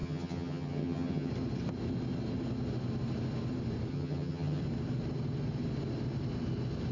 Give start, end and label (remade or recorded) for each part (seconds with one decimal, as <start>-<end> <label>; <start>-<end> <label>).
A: 0.0-1.3 remade; 1.3-3.9 recorded; 3.9-4.6 remade; 4.6-6.9 recorded